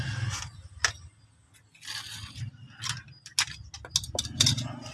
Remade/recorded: recorded